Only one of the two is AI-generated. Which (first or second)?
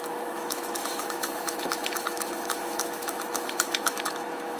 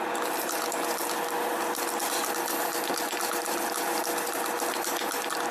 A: first